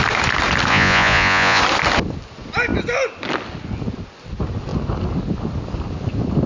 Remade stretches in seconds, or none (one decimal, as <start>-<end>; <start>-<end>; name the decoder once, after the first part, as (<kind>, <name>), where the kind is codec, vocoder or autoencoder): 0.7-1.6 (vocoder, Vocos)